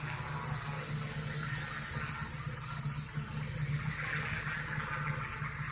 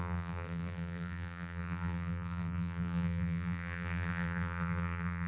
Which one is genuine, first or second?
first